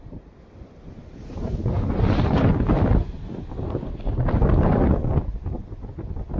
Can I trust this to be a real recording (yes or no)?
yes